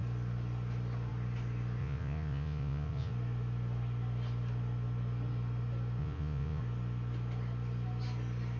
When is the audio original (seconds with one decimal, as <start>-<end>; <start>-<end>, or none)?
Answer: 0.0-1.8; 3.1-6.0; 6.6-8.6